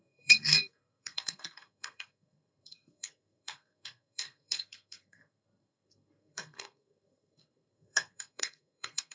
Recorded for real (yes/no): no